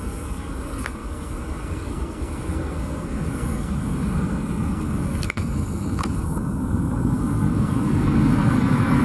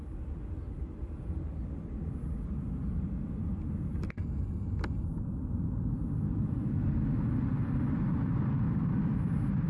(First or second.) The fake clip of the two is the first